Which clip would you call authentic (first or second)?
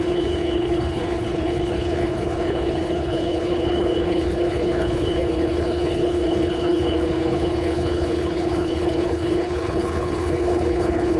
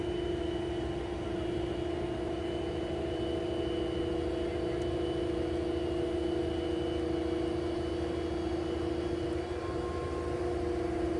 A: second